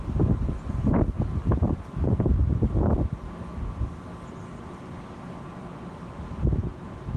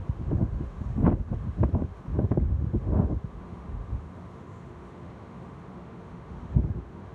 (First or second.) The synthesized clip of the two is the second